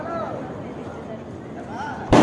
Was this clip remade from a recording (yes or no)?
no